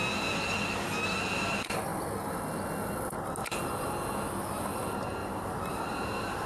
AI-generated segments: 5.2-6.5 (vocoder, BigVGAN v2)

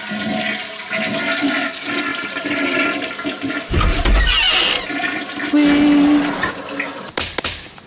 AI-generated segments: none

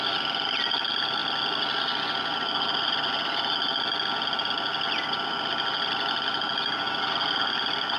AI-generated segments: none